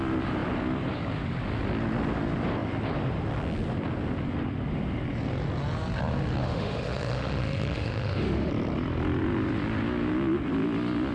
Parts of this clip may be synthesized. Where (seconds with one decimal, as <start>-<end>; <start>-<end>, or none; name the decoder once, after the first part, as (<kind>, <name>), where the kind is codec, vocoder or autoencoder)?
6.4-8.5 (autoencoder, DAC-VAE)